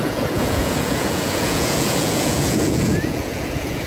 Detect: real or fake fake